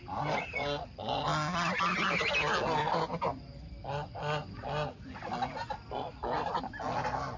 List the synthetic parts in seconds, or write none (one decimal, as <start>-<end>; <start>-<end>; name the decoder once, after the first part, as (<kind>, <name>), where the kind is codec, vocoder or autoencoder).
none